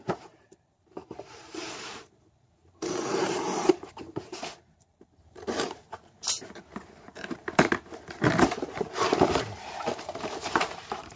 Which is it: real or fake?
fake